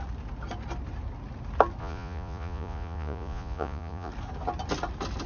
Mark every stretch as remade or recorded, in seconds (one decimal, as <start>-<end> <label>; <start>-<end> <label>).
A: 0.0-1.8 recorded; 1.8-4.1 remade; 4.1-5.3 recorded